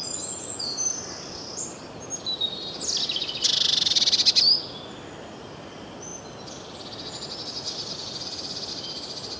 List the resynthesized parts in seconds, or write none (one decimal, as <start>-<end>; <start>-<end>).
none